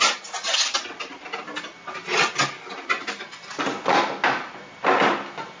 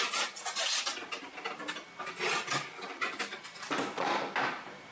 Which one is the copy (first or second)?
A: second